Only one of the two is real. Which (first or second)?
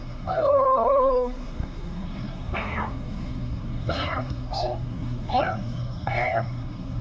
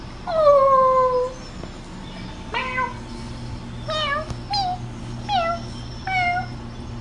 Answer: second